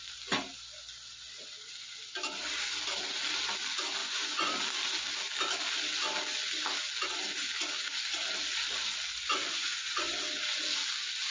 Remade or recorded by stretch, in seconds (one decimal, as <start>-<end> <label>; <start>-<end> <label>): 0.0-4.0 recorded; 4.0-4.5 remade; 4.5-9.5 recorded; 9.5-10.1 remade; 10.1-11.3 recorded